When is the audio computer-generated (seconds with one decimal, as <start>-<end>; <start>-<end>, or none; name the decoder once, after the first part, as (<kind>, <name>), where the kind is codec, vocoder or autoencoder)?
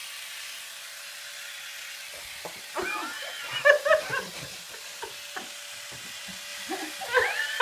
6.5-7.6 (vocoder, BigVGAN v2)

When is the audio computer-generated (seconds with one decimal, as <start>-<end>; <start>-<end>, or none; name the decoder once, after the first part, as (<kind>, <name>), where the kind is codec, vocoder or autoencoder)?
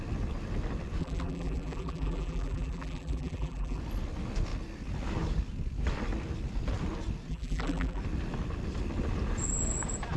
1.0-3.8 (vocoder, BigVGAN v2); 7.3-8.0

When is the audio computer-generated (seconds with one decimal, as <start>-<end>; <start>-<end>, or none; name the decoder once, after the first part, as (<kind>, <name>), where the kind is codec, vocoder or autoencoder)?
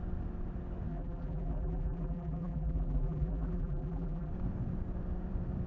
0.9-4.3 (vocoder, BigVGAN v2)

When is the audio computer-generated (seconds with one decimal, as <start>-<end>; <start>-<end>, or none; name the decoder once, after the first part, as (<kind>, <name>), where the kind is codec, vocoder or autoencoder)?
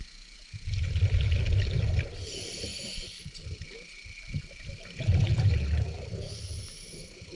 2.7-6.6 (vocoder, BigVGAN v2)